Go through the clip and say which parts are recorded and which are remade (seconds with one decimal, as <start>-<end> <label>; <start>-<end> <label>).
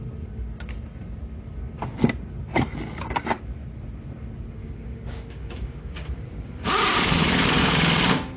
0.0-4.6 recorded; 4.6-6.5 remade; 6.5-7.6 recorded; 7.6-8.4 remade